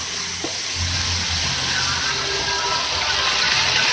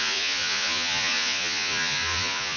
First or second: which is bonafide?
first